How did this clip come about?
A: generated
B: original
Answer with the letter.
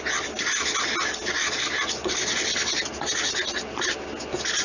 B